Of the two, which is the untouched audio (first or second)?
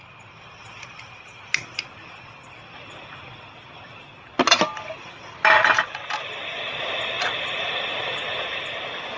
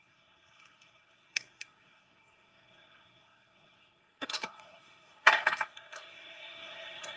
first